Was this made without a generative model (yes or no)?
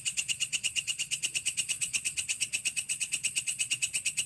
no